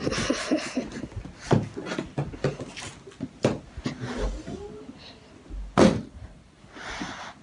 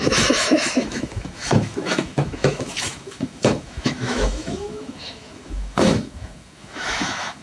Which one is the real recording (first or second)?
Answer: first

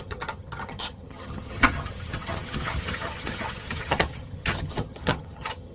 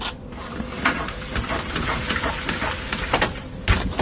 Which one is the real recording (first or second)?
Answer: second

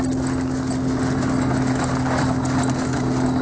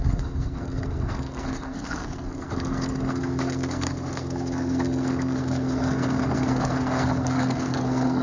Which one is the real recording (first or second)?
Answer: first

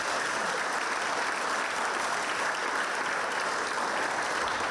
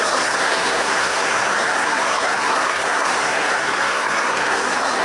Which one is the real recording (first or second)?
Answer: first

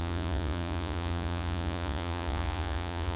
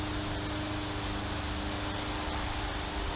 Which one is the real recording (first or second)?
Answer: second